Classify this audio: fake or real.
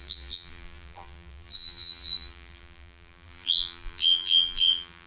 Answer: fake